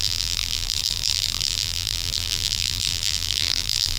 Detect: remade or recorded remade